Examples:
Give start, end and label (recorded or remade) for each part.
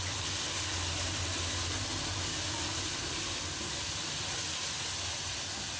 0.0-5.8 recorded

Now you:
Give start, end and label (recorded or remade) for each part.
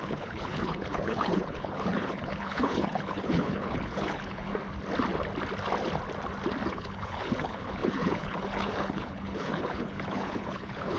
0.0-4.5 remade; 4.5-6.7 recorded; 6.7-11.0 remade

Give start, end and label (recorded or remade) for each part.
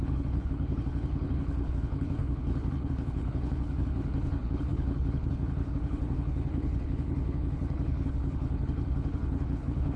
0.0-10.0 remade